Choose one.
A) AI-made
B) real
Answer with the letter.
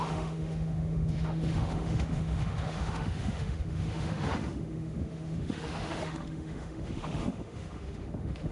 A